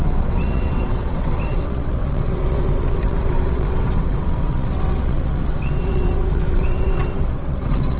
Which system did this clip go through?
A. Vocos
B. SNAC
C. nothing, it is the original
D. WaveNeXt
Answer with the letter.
D